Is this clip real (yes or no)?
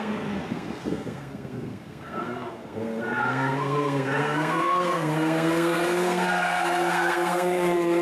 no